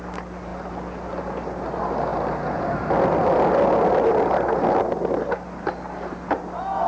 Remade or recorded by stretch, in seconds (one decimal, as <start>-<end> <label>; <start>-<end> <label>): 0.0-6.9 recorded